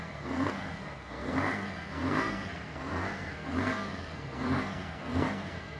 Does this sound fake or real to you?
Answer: fake